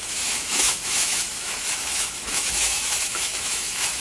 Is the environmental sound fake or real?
fake